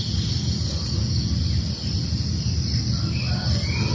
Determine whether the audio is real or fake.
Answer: real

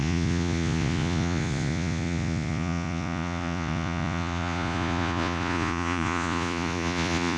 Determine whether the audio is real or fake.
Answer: fake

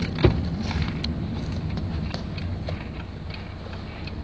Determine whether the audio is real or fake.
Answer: real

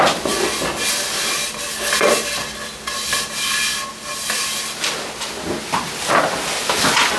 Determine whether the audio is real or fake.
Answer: real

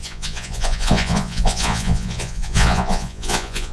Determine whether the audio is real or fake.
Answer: fake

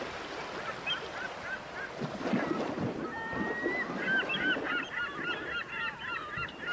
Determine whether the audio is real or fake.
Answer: real